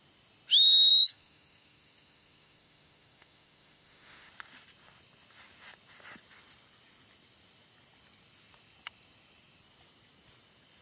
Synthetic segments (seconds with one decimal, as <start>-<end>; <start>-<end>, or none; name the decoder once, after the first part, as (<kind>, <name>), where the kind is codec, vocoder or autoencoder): 0.9-4.3 (autoencoder, DAC-VAE)